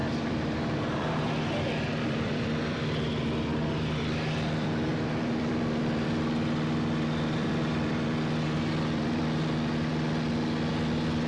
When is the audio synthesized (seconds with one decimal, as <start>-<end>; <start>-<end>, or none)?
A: 0.0-1.3; 1.9-2.8; 4.9-9.2